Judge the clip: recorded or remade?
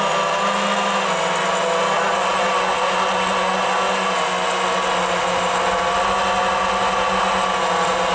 recorded